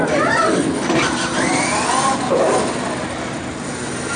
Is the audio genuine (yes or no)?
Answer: yes